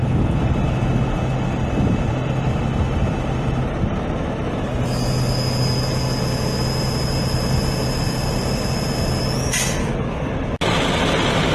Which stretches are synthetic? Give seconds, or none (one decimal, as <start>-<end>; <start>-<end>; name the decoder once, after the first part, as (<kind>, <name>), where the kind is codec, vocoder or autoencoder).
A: 9.8-10.4 (codec, DAC)